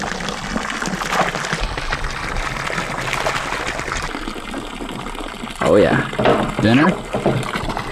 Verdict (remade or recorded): recorded